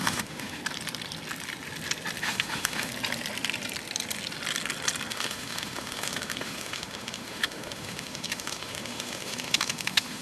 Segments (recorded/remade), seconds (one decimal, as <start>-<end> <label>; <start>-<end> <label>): 0.0-0.6 remade; 0.6-2.2 recorded; 2.2-2.9 remade; 2.9-5.1 recorded; 5.1-10.2 remade